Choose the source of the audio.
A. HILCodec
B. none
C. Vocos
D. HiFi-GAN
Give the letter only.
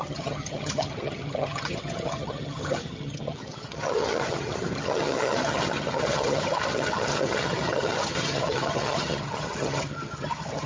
D